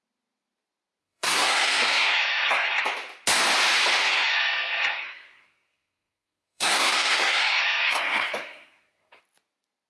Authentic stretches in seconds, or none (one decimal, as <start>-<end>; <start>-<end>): 0.0-1.0; 2.8-4.0; 9.2-9.9